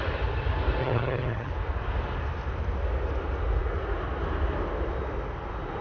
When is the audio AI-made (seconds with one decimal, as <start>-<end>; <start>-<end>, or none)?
0.8-1.5